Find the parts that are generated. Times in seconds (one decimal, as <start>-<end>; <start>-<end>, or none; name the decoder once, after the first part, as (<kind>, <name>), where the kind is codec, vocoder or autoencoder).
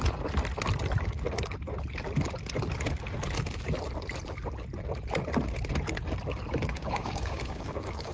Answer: 6.7-8.1 (codec, DAC)